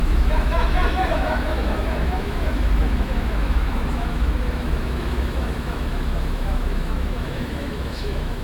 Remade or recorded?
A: remade